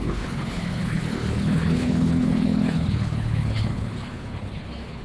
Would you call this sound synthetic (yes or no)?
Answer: yes